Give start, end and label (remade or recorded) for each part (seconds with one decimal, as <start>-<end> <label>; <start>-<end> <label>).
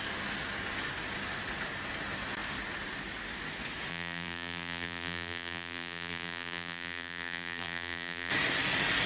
0.0-3.9 recorded; 3.9-8.3 remade; 8.3-9.1 recorded